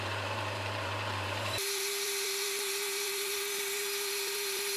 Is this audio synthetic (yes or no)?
yes